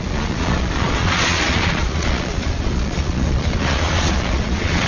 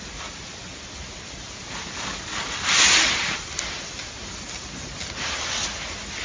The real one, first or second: second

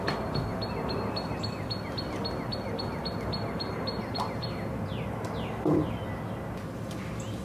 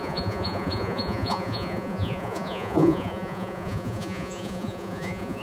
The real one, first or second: first